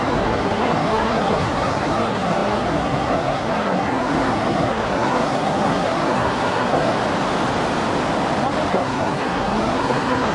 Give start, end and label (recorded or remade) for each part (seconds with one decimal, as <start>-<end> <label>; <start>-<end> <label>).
0.0-7.0 remade; 7.0-8.7 recorded; 8.7-10.3 remade